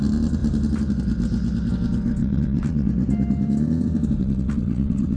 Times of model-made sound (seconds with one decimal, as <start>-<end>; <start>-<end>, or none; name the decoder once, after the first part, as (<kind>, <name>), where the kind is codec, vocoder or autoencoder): 2.2-2.9 (vocoder, WaveNeXt); 4.2-5.2